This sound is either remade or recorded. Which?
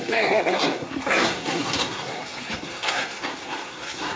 remade